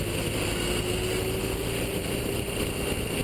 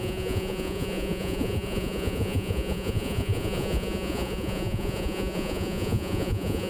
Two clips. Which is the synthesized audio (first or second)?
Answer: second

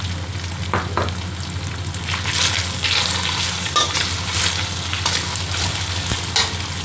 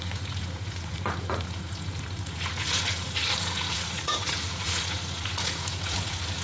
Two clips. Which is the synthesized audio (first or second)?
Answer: second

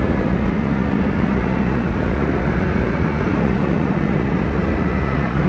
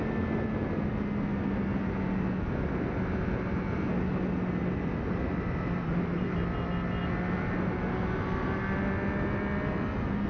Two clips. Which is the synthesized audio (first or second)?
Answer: first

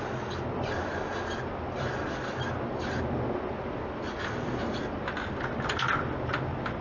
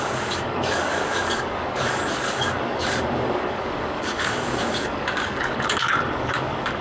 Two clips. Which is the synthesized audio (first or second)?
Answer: second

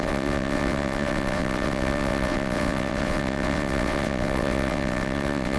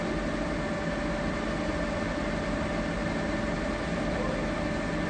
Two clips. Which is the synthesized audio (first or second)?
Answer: first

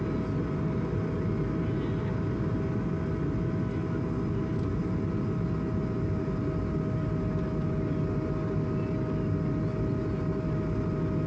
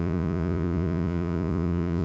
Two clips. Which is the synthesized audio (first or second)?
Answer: second